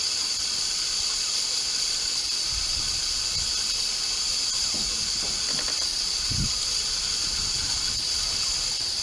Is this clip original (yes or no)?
yes